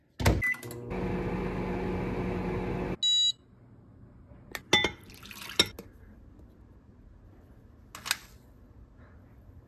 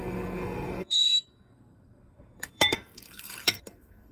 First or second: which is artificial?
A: second